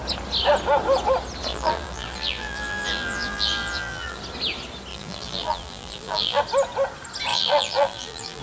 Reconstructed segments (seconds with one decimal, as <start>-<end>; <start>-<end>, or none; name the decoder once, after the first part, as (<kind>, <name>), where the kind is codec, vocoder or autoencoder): 1.5-4.2 (vocoder, BigVGAN v2); 4.9-6.4; 7.3-8.4